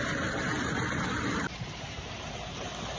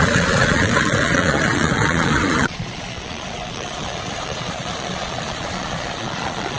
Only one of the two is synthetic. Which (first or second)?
second